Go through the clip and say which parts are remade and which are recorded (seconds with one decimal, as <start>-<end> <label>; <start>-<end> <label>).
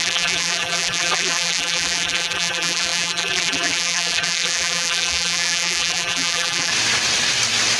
0.0-6.7 remade; 6.7-7.8 recorded